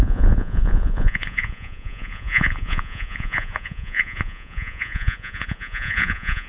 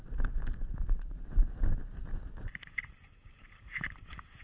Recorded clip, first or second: second